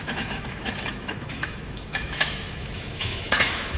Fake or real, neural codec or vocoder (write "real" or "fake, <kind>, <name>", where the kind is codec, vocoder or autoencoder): fake, autoencoder, DAC-VAE